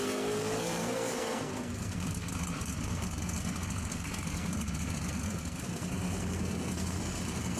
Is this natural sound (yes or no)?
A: no